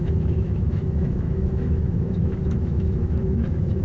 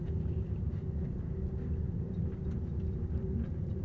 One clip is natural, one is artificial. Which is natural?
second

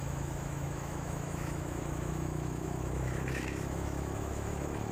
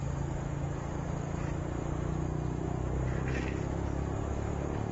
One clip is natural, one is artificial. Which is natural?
second